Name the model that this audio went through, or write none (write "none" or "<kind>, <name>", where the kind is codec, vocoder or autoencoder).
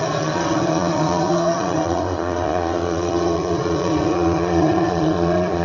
vocoder, Vocos